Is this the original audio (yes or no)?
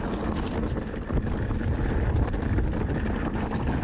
yes